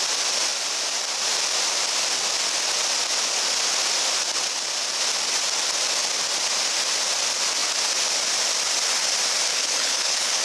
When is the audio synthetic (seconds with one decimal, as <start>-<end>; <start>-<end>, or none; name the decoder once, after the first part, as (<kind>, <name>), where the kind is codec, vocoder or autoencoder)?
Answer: 9.5-10.4 (codec, HILCodec)